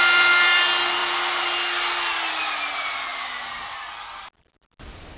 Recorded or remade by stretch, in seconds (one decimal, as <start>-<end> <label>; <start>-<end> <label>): 0.0-5.2 recorded